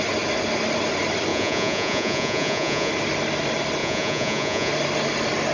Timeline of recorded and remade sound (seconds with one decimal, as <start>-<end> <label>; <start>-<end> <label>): 0.0-1.3 recorded; 1.3-2.9 remade; 2.9-3.8 recorded; 3.8-4.7 remade; 4.7-5.5 recorded